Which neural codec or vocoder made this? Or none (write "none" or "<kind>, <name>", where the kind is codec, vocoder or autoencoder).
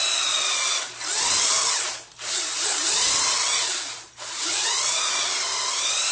vocoder, BigVGAN v2